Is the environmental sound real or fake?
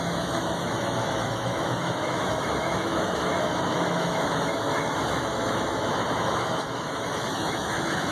fake